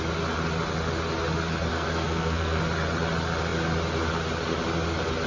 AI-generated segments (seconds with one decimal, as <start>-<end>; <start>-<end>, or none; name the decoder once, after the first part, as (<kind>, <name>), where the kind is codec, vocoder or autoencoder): 1.7-2.6 (codec, SNAC)